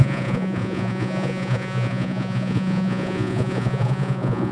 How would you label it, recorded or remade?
remade